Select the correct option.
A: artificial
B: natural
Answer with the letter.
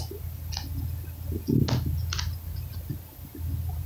B